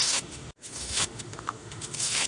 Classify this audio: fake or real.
fake